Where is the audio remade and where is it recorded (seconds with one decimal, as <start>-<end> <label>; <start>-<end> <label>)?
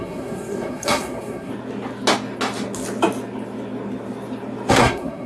0.0-1.5 remade; 1.5-4.7 recorded; 4.7-5.3 remade